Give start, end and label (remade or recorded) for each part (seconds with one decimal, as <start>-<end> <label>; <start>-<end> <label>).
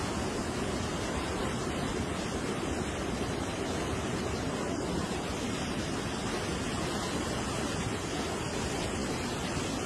0.0-9.9 recorded